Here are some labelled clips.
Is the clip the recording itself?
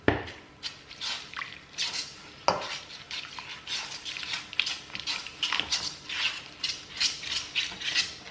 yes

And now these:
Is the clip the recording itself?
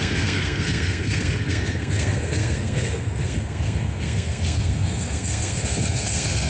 no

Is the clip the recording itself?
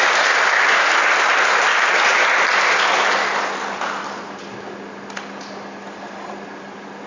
yes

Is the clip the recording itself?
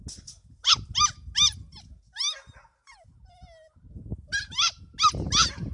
yes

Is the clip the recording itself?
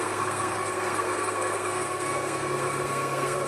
no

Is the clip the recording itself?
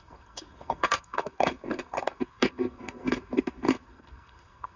no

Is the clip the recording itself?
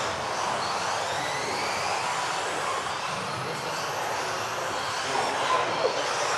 yes